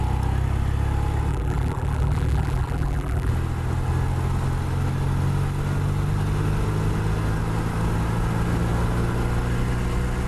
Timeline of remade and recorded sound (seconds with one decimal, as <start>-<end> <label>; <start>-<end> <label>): 0.0-1.3 recorded; 1.3-3.3 remade; 3.3-10.3 recorded